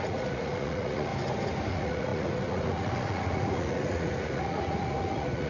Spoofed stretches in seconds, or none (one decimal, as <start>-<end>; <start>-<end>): 0.0-1.1; 1.7-5.5